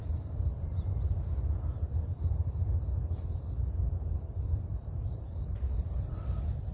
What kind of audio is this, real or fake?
real